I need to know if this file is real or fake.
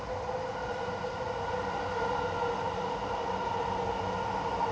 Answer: real